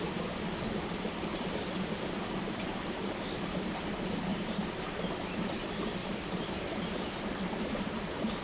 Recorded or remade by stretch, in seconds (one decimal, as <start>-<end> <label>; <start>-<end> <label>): 0.0-1.3 recorded; 1.3-3.2 remade; 3.2-4.3 recorded; 4.3-5.0 remade; 5.0-6.0 recorded; 6.0-7.2 remade; 7.2-8.4 recorded